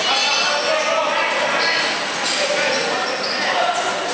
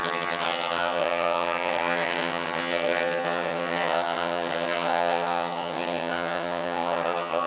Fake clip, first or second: second